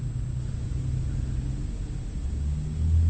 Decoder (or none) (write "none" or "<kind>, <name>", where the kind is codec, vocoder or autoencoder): none